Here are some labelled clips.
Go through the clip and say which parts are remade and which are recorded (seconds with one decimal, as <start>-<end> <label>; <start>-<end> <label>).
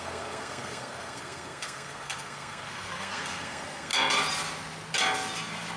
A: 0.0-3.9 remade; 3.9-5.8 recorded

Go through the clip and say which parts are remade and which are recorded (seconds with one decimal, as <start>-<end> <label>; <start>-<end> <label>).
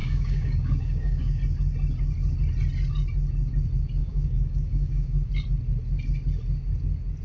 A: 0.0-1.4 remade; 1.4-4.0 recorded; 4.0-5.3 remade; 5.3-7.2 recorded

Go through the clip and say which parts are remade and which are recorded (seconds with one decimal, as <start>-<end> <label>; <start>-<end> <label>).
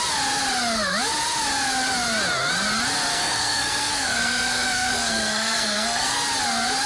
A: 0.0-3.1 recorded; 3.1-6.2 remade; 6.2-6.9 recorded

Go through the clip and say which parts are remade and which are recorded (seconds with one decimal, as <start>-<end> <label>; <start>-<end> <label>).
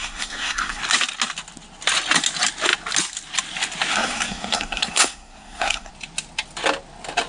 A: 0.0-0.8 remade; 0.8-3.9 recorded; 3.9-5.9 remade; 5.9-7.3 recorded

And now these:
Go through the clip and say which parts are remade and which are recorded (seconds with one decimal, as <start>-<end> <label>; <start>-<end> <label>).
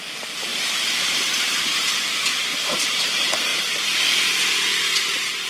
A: 0.0-0.5 recorded; 0.5-1.6 remade; 1.6-2.5 recorded; 2.5-3.0 remade; 3.0-5.5 recorded